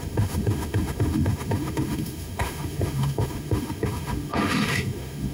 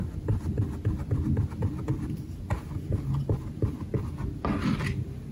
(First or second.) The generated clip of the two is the first